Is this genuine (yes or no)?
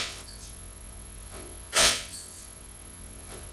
no